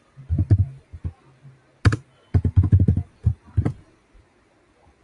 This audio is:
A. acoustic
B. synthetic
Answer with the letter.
A